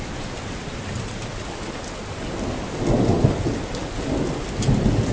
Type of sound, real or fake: real